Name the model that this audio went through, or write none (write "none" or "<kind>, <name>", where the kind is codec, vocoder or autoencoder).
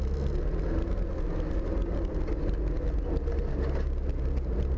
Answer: none